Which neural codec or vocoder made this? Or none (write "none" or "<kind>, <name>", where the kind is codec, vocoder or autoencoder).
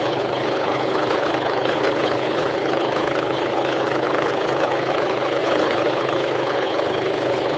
codec, HILCodec